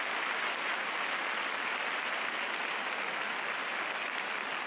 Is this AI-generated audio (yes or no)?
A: yes